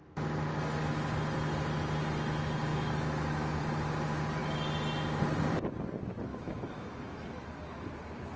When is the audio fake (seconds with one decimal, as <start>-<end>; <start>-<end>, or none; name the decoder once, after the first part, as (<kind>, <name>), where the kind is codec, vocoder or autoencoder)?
2.7-3.9 (autoencoder, DAC-VAE); 6.3-7.9